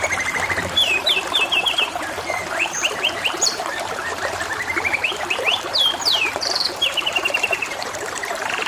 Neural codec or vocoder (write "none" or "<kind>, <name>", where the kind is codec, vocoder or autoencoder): vocoder, BigVGAN v2